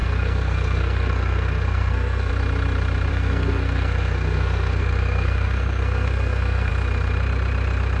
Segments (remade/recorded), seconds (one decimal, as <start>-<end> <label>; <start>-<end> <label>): 0.0-2.3 remade; 2.3-3.1 recorded; 3.1-6.7 remade; 6.7-8.0 recorded